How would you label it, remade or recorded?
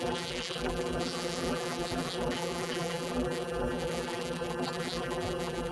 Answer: remade